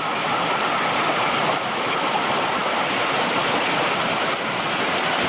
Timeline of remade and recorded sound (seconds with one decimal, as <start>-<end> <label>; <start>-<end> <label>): 0.0-5.3 recorded